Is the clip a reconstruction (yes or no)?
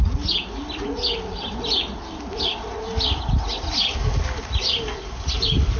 no